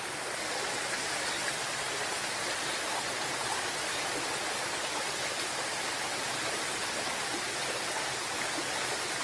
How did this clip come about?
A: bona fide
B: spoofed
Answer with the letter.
A